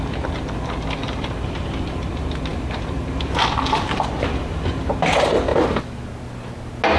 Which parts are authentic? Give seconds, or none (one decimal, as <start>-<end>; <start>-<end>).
0.0-1.0; 2.1-2.5; 4.8-7.0